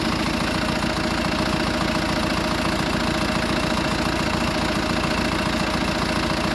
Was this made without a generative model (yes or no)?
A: yes